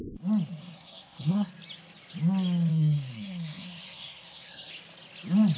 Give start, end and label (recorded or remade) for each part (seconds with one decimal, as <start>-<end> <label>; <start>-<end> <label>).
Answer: 0.0-0.6 recorded; 0.6-1.5 remade; 1.5-2.7 recorded; 2.7-4.7 remade; 4.7-5.6 recorded